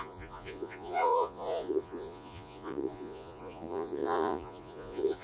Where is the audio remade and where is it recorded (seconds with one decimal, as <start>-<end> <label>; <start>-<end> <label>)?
0.0-5.2 remade